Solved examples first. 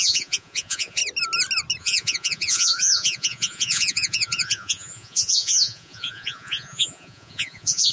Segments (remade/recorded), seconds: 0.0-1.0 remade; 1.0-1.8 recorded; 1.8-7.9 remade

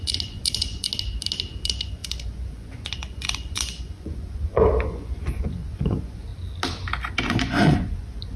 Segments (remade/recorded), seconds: 0.0-0.9 remade; 0.9-1.6 recorded; 1.6-6.3 remade; 6.3-7.2 recorded; 7.2-8.4 remade